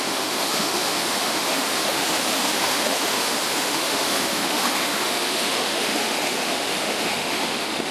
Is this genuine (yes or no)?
no